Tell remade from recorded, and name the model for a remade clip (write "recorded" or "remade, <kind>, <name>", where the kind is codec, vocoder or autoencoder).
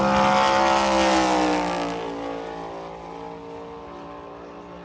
recorded